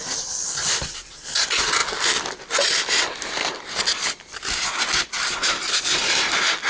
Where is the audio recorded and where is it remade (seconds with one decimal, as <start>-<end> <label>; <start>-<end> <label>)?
0.0-6.7 recorded